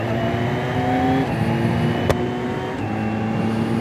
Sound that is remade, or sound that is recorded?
recorded